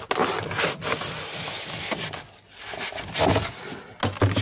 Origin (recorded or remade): recorded